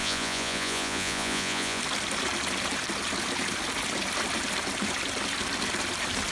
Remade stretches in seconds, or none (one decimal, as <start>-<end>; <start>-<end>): 0.0-1.8